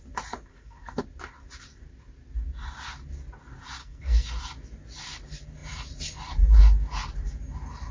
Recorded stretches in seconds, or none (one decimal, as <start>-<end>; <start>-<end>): 0.0-0.5; 1.0-3.8; 4.3-7.9